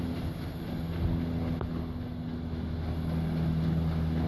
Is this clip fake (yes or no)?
no